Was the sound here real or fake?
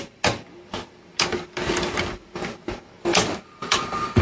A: real